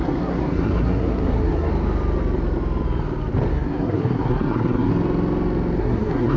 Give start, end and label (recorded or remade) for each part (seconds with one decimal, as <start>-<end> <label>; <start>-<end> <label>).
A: 0.0-1.7 remade; 1.7-3.5 recorded; 3.5-4.9 remade; 4.9-5.8 recorded; 5.8-6.4 remade